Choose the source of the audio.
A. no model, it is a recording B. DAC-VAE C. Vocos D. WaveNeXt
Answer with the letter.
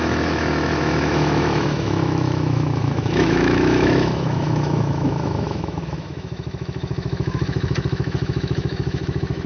B